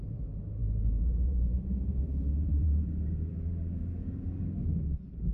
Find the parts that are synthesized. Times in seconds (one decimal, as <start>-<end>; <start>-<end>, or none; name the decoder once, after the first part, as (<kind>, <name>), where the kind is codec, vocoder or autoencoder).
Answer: 0.6-3.8 (vocoder, BigVGAN v2)